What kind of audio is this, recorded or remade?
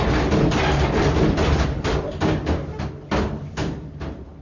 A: recorded